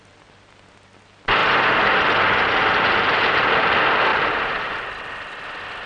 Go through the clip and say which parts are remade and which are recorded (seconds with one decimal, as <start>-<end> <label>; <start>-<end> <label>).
0.0-5.9 recorded